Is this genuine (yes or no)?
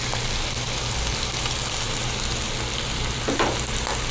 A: yes